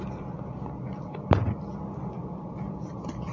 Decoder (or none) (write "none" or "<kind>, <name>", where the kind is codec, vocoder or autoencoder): none